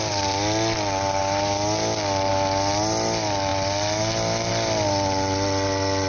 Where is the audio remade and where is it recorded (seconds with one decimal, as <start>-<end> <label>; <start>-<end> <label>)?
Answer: 0.0-6.1 recorded